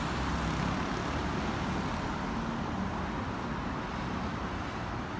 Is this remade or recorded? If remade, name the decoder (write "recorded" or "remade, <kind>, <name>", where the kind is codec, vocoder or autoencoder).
recorded